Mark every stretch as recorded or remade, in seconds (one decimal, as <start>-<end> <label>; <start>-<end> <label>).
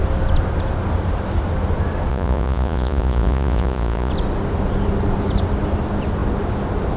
0.0-2.1 recorded; 2.1-4.1 remade; 4.1-7.0 recorded